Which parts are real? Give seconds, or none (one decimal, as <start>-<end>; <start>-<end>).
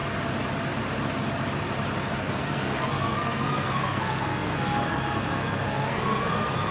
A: 0.0-2.2